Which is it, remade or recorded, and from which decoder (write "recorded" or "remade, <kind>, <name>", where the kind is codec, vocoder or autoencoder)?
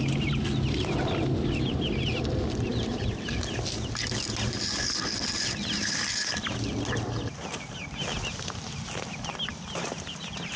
recorded